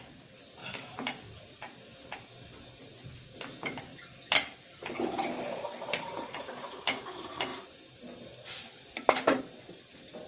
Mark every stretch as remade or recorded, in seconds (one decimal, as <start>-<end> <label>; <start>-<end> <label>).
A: 0.0-0.6 recorded; 0.6-2.9 remade; 2.9-3.9 recorded; 3.9-7.0 remade; 7.0-7.5 recorded; 7.5-9.4 remade; 9.4-10.3 recorded